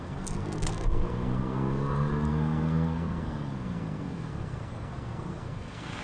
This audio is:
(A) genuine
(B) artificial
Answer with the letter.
B